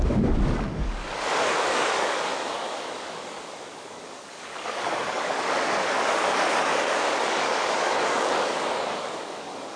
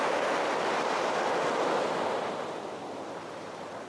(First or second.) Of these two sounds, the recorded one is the second